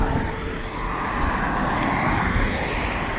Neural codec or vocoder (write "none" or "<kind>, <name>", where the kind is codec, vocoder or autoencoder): none